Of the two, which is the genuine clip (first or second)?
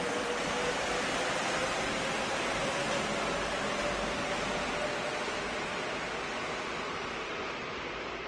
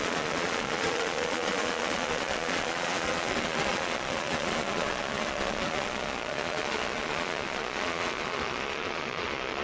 first